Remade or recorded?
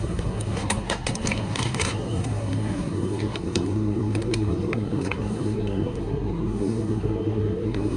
remade